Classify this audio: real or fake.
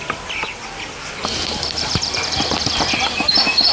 fake